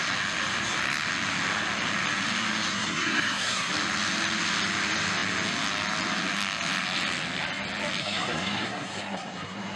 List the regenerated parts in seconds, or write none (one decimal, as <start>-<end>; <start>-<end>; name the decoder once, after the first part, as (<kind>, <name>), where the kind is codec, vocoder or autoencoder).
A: 2.7-3.7 (codec, SNAC); 8.0-9.8